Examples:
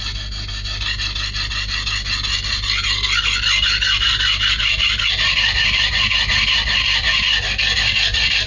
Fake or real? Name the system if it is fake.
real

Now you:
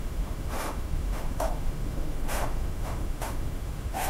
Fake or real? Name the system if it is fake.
fake, autoencoder, DAC-VAE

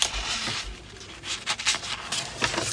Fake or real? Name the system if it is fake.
real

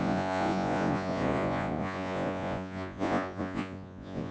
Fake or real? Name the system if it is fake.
fake, vocoder, Vocos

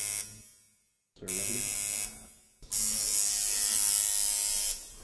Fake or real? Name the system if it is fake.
real